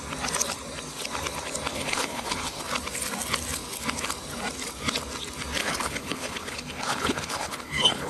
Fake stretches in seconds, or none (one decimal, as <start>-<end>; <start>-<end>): 1.7-2.6; 5.6-8.1